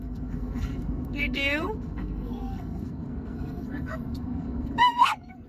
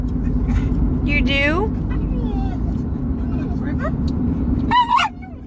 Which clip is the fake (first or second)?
first